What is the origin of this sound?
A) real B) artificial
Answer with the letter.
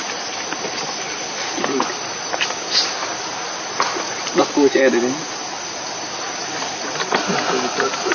A